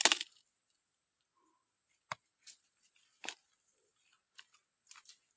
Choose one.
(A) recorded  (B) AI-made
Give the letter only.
A